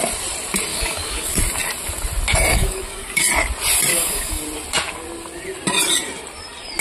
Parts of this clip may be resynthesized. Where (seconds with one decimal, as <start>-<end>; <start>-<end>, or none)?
0.7-1.4; 2.5-3.2; 3.9-4.4